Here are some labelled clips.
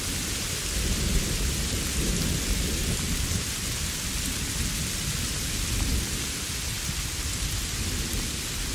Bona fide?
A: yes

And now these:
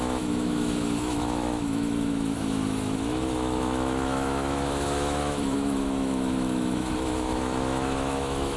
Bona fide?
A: no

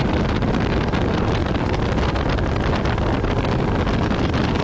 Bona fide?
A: yes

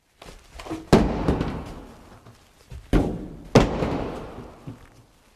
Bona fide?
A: yes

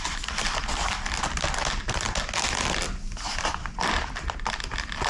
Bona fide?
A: yes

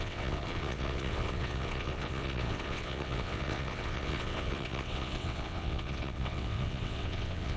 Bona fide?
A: no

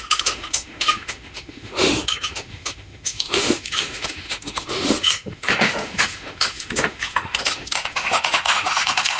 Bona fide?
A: no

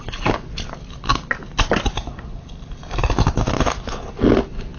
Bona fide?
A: yes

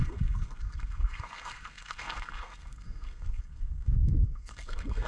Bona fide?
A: no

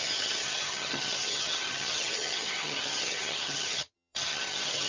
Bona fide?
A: no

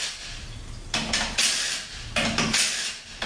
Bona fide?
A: yes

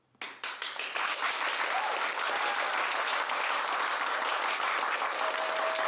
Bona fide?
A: yes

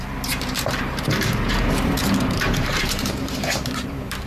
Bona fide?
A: no